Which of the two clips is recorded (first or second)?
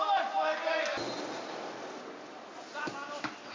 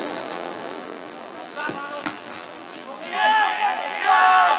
first